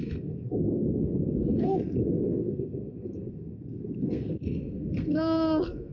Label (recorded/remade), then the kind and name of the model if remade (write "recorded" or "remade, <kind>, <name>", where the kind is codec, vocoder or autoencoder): remade, codec, SNAC